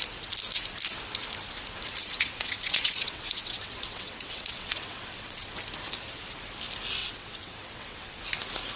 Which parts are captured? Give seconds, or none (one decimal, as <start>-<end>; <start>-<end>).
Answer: 0.0-2.0; 5.6-7.0; 8.2-8.8